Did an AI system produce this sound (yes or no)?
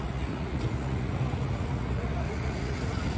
yes